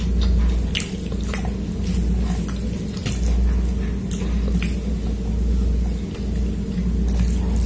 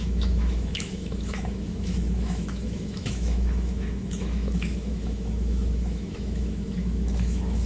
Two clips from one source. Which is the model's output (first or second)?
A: second